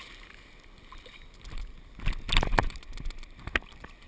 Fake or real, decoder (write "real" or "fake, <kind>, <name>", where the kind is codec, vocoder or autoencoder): real